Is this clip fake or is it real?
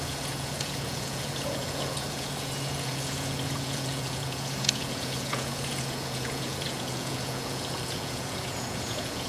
fake